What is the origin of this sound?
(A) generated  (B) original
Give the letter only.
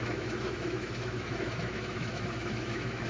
A